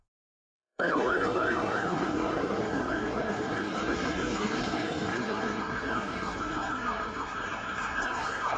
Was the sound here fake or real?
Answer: fake